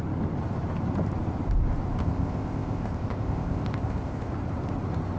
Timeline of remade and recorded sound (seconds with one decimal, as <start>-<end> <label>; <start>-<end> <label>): 0.0-2.0 recorded; 2.0-4.3 remade; 4.3-5.2 recorded